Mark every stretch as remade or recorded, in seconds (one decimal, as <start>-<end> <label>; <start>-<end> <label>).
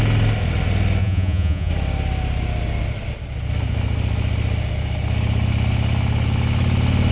0.0-1.0 recorded; 1.0-1.7 remade; 1.7-7.1 recorded